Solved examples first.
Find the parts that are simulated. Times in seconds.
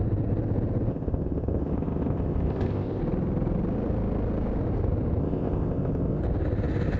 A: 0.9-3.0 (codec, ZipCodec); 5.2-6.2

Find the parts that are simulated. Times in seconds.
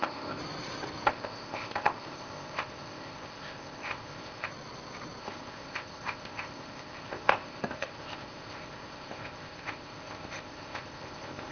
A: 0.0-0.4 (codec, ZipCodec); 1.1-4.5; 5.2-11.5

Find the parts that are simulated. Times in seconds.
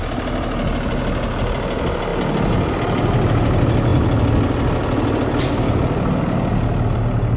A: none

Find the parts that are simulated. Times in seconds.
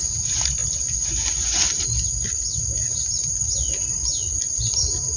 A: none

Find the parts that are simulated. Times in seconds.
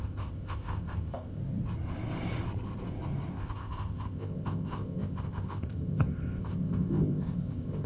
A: 0.0-1.4 (codec, ZipCodec); 3.3-7.9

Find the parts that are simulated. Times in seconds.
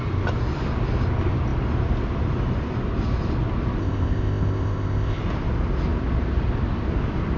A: 3.8-5.2 (codec, ZipCodec)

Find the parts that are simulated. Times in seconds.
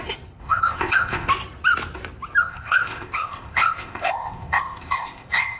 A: 0.4-1.3 (codec, ZipCodec); 2.4-5.6